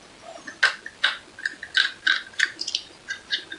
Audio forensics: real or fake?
real